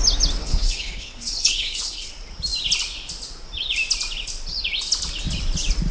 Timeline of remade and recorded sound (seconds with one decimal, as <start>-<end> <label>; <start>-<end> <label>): 0.0-0.4 recorded; 0.4-2.1 remade; 2.1-5.9 recorded